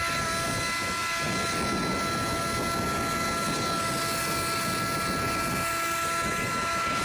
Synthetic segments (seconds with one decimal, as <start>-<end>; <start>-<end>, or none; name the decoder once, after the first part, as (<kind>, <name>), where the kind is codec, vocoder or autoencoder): none